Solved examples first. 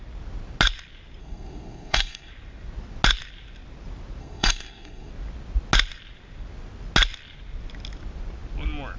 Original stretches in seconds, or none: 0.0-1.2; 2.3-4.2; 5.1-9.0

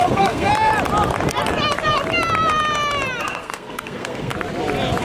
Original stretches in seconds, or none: 0.5-3.2; 4.3-5.0